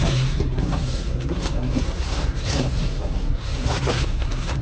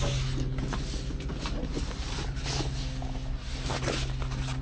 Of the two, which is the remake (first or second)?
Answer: first